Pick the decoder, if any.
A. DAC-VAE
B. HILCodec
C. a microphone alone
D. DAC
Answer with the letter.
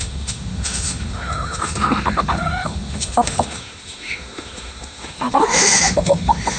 A